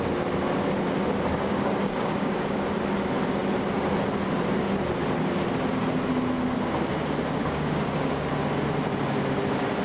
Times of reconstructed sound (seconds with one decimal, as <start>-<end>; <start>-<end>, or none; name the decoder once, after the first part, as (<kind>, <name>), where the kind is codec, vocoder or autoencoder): 1.3-2.7 (codec, DAC); 7.4-8.3